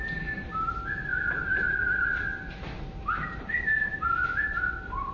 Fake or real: fake